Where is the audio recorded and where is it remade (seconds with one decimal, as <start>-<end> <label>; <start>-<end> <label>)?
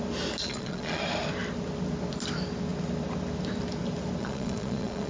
0.0-0.4 recorded; 0.4-1.0 remade; 1.0-4.2 recorded; 4.2-5.1 remade